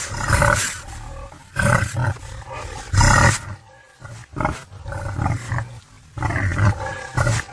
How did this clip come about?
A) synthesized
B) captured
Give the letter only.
B